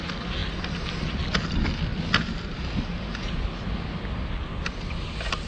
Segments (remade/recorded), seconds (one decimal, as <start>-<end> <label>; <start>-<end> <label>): 0.0-5.5 recorded